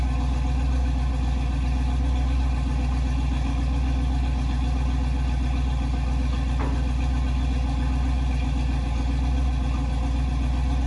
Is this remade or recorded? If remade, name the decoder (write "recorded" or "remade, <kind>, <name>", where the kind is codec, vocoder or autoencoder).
recorded